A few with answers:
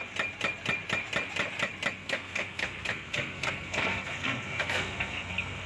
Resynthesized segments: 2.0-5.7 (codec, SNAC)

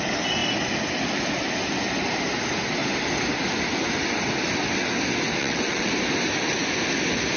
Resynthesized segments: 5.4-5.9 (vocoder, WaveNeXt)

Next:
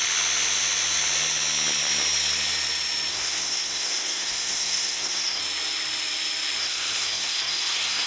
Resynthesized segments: 3.1-5.4 (codec, SNAC); 6.6-8.1

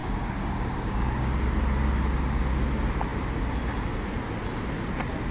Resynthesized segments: 0.0-1.3 (codec, DAC)